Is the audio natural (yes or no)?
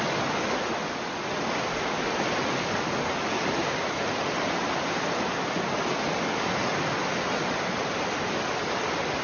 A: yes